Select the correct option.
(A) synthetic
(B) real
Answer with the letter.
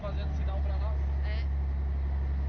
B